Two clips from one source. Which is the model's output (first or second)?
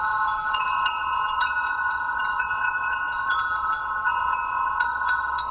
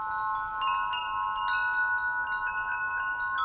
first